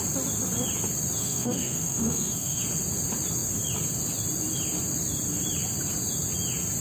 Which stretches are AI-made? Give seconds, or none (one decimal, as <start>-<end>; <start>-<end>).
1.2-2.6